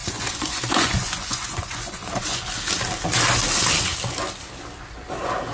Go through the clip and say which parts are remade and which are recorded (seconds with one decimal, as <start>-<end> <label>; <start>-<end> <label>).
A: 0.0-2.5 remade; 2.5-5.5 recorded